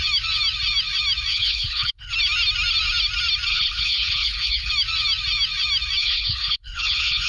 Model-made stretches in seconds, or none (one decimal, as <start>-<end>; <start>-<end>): 1.3-2.1; 3.5-4.7; 6.0-7.3